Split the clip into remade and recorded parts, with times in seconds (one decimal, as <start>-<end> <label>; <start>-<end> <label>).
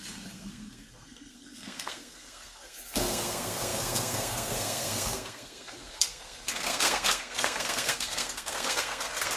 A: 0.0-9.4 remade